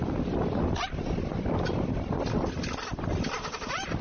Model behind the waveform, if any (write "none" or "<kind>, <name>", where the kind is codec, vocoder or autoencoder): none